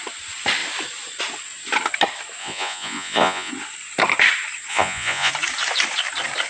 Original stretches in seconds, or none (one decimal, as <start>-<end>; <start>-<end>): 0.0-2.4; 3.5-4.7; 5.3-6.5